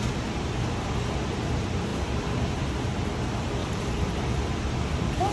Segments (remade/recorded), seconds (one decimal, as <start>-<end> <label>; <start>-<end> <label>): 0.0-3.6 recorded; 3.6-4.4 remade; 4.4-5.3 recorded